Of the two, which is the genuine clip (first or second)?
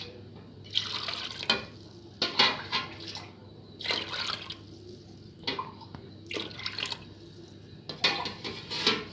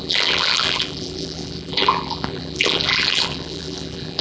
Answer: first